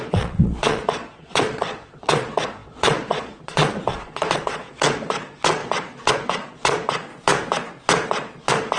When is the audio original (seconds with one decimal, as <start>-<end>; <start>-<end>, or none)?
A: 7.1-8.1